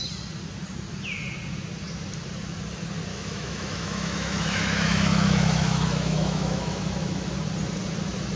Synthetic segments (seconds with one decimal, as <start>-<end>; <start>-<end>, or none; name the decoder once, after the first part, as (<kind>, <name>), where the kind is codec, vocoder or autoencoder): 3.1-7.3 (autoencoder, DAC-VAE)